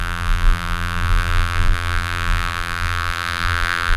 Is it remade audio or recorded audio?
remade